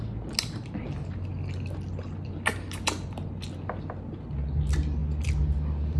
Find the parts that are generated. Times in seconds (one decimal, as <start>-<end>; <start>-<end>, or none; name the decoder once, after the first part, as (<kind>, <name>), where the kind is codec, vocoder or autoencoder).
none